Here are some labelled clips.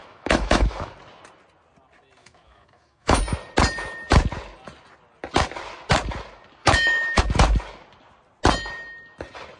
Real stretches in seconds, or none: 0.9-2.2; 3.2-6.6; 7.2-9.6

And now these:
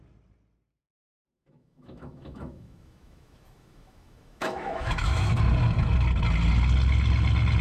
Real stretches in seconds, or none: 0.0-1.1; 5.3-7.6

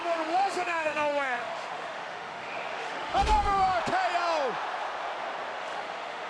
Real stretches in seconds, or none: 3.8-5.6

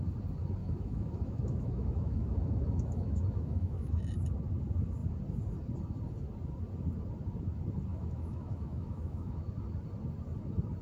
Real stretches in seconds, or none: 0.0-0.6; 4.0-7.9; 9.5-10.8

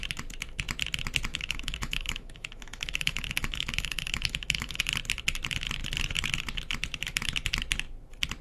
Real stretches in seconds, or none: 0.0-1.3; 4.8-8.4

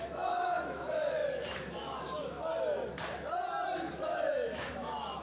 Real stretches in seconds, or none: 2.5-3.9

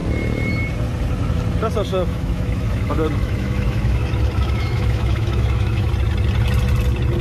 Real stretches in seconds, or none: 0.0-1.9; 5.9-7.2

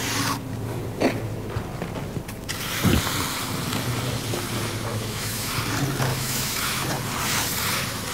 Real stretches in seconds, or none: 0.0-4.9; 5.5-6.1; 6.9-8.1